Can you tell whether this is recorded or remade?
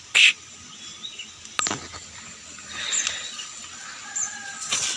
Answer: recorded